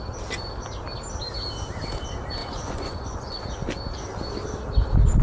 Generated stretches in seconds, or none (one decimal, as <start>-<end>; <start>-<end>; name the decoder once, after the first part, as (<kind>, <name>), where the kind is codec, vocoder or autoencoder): 2.4-3.4 (vocoder, Vocos)